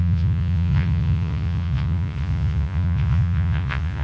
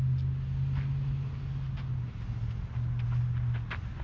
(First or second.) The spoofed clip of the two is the first